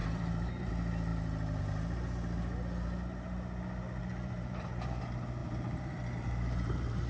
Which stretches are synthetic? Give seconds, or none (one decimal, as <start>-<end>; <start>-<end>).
0.0-0.7; 4.0-5.0; 5.4-7.1